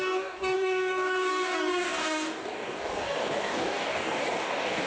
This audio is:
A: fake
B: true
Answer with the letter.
A